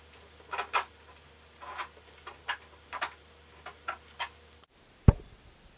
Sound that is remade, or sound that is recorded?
recorded